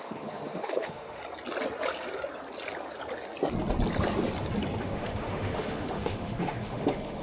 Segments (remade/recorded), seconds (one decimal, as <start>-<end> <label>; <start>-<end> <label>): 0.0-1.2 remade; 1.2-4.8 recorded; 4.8-7.2 remade